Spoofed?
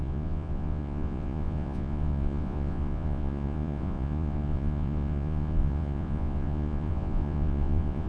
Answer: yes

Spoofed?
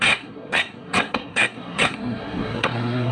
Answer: yes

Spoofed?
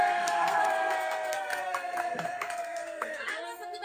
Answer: yes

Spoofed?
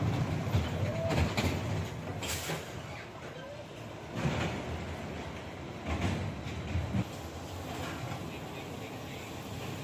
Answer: no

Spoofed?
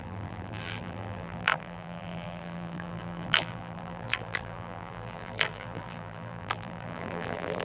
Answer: yes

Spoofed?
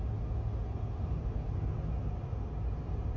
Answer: no